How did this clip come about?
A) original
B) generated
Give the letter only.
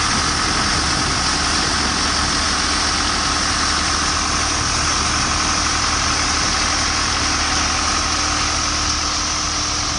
A